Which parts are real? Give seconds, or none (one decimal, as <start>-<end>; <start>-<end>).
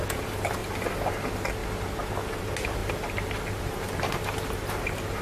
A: 0.0-2.8